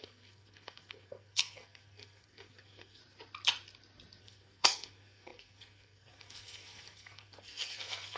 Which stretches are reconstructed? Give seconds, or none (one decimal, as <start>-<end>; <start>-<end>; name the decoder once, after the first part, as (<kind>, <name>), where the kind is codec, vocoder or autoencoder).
0.0-3.0 (codec, SNAC); 4.2-8.2